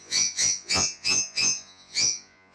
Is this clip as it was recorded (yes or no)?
no